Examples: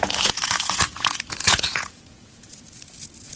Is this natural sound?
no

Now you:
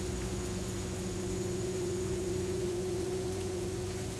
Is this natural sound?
no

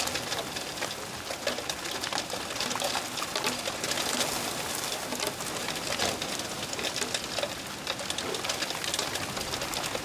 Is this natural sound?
yes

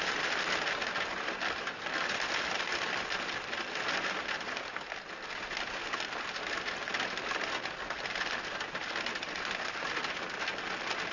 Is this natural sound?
yes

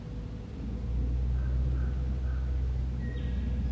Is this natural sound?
yes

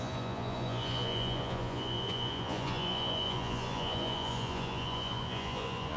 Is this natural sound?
no